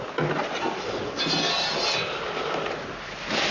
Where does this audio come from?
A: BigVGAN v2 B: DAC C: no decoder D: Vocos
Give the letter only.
C